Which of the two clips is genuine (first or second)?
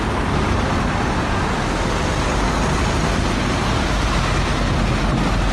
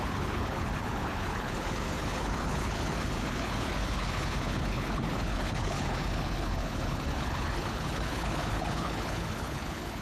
first